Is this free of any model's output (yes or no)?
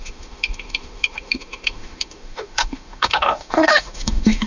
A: no